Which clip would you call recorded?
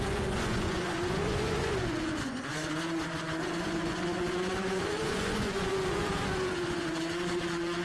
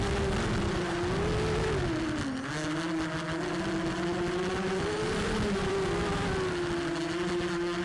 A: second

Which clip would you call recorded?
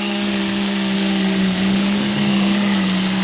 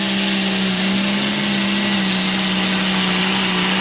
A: second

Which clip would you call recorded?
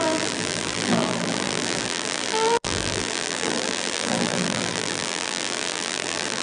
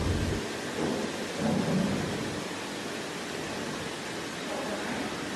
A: second